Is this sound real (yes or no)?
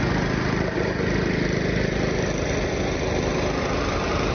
yes